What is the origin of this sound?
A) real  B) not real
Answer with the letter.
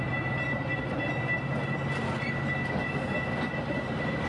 A